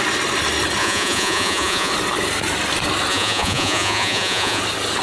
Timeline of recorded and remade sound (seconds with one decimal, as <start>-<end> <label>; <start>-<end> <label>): 0.0-0.8 recorded; 0.8-1.9 remade; 1.9-3.1 recorded; 3.1-4.6 remade; 4.6-5.0 recorded